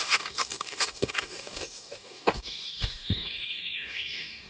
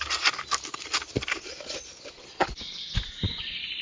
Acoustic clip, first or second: second